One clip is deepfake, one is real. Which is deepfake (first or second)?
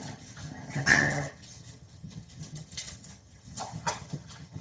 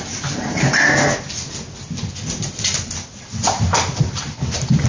first